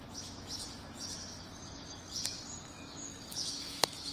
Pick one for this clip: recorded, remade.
remade